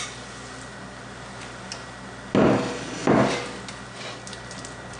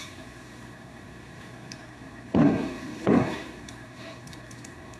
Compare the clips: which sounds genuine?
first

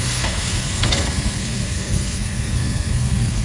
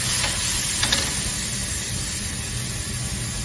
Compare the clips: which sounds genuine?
second